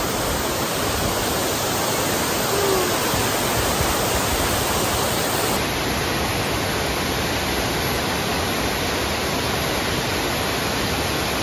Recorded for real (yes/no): yes